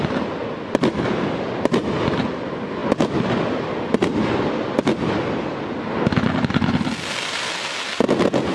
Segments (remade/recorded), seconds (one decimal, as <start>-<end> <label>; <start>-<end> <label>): 0.0-8.5 recorded